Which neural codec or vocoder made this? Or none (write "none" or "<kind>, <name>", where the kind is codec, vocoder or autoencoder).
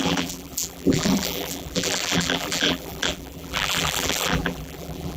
vocoder, BigVGAN v2